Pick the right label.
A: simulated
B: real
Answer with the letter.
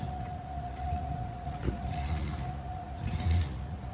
A